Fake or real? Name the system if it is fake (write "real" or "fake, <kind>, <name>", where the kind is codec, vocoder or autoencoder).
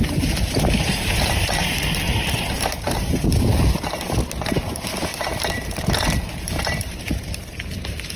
fake, vocoder, BigVGAN v2